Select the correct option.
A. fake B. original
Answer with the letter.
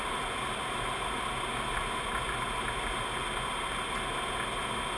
B